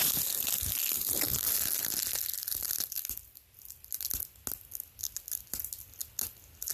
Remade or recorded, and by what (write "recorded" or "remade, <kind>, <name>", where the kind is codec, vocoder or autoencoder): recorded